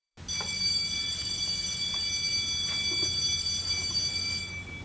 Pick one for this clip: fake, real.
real